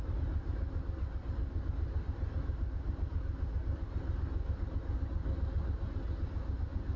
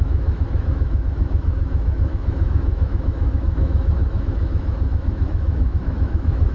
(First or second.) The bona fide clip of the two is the first